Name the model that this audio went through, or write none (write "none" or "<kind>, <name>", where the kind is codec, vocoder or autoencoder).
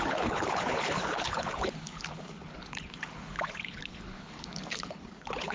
codec, HILCodec